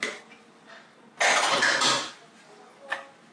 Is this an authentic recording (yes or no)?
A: yes